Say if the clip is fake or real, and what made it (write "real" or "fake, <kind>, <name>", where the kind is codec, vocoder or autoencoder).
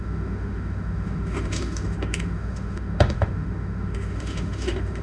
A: fake, autoencoder, DAC-VAE